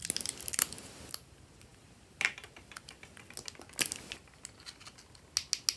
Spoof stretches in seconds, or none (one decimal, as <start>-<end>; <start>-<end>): none